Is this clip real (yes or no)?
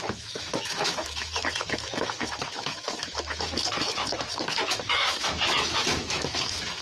no